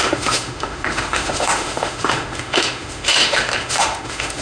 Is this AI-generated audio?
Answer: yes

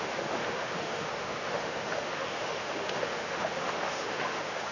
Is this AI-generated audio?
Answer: yes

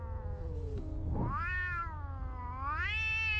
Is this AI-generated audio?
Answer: no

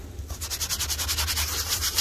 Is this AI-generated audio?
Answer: no